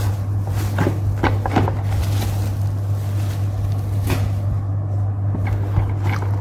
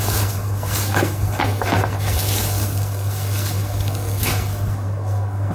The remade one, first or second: second